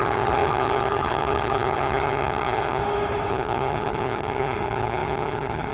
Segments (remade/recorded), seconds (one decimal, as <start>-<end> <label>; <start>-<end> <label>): 0.0-2.8 remade; 2.8-3.3 recorded; 3.3-5.7 remade